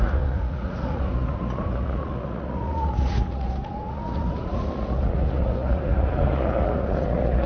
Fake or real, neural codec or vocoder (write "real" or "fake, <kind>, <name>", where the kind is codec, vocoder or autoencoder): fake, vocoder, Vocos